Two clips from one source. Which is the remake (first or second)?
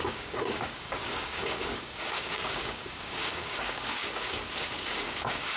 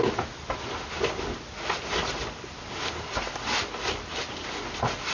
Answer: first